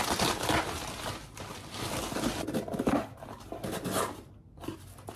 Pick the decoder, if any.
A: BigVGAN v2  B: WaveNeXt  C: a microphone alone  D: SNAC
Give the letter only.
C